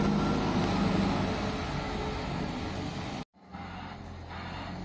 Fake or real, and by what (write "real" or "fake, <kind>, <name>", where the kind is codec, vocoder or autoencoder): real